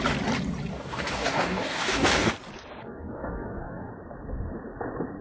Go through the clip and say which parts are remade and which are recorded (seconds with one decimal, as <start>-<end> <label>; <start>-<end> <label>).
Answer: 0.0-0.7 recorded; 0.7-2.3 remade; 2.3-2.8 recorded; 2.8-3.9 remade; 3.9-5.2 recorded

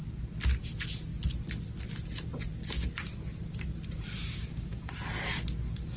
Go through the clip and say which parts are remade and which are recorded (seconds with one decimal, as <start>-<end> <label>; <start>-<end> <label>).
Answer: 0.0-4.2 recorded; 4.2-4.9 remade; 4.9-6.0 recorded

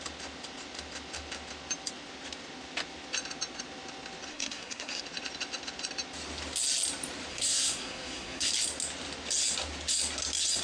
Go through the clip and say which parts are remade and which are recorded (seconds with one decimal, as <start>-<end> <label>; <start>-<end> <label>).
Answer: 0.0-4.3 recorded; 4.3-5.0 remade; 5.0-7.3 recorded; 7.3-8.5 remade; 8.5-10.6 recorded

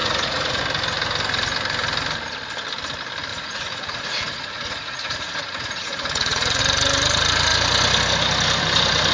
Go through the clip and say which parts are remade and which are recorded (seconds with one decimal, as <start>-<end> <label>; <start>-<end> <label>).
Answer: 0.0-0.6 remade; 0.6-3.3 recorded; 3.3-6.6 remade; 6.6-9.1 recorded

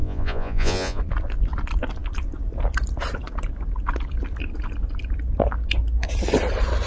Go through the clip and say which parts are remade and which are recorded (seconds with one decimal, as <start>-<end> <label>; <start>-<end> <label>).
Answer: 0.0-1.0 remade; 1.0-6.9 recorded

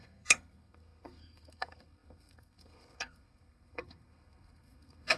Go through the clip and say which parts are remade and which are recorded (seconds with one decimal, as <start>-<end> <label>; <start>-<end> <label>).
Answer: 0.0-5.2 remade

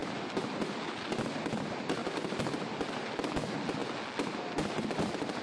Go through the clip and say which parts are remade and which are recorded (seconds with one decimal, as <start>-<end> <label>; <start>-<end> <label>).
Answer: 0.0-1.0 remade; 1.0-5.4 recorded